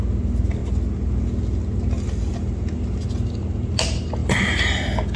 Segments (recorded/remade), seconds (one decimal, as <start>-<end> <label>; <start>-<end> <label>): 0.0-4.2 recorded; 4.2-4.8 remade; 4.8-5.2 recorded